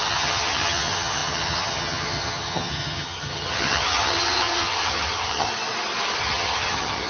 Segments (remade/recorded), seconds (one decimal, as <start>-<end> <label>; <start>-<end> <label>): 0.0-5.5 remade; 5.5-6.2 recorded; 6.2-7.1 remade